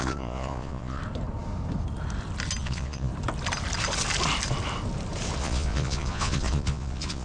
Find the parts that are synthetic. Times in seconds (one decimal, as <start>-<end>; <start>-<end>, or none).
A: 0.0-1.0; 2.6-3.1; 5.4-7.2